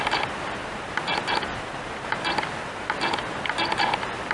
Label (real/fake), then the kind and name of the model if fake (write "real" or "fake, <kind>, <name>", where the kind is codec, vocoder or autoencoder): real